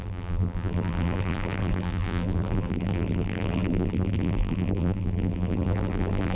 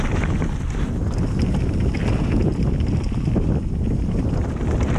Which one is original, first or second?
second